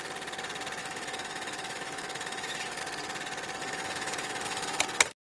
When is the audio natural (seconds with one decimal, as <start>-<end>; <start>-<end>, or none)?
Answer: 0.0-0.8; 2.8-3.6; 4.8-5.3